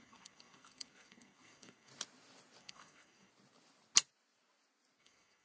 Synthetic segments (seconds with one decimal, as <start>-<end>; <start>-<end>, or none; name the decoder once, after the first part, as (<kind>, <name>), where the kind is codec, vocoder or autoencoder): 0.0-1.9 (codec, SNAC); 2.6-3.3; 5.0-5.4